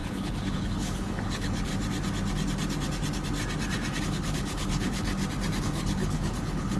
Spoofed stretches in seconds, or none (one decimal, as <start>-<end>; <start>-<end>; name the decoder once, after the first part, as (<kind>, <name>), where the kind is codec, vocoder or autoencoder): 0.0-1.7 (codec, HILCodec); 4.0-5.1; 5.6-6.8